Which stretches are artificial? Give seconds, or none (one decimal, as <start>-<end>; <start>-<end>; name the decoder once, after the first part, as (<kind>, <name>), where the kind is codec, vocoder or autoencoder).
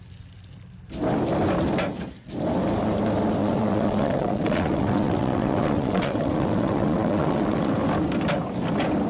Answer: 3.4-7.7 (vocoder, WaveNeXt)